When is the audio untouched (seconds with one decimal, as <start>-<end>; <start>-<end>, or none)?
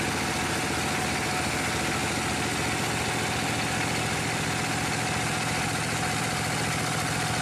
0.0-7.4